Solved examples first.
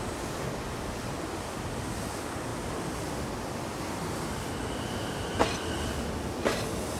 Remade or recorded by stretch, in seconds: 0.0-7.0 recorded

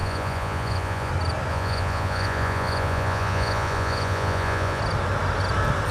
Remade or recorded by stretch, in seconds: 0.0-1.1 remade; 1.1-1.5 recorded; 1.5-4.8 remade; 4.8-5.9 recorded

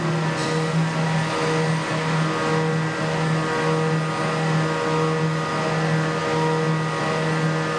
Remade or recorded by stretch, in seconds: 0.0-7.8 recorded

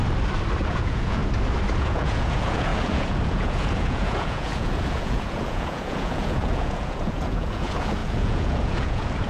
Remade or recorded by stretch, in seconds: 0.0-0.6 recorded; 0.6-1.2 remade; 1.2-1.8 recorded; 1.8-9.3 remade

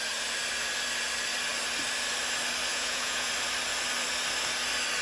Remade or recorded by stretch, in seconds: 0.0-2.7 recorded; 2.7-3.3 remade; 3.3-5.0 recorded

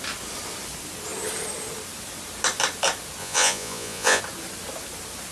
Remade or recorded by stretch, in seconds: 0.0-3.2 recorded; 3.2-4.2 remade; 4.2-5.3 recorded

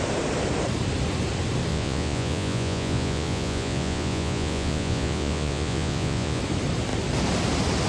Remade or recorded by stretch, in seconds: 0.0-1.7 recorded; 1.7-6.4 remade; 6.4-7.9 recorded